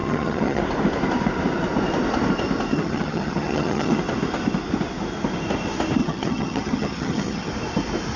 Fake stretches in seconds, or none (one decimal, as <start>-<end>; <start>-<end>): 0.0-0.6; 2.7-4.0; 6.0-7.5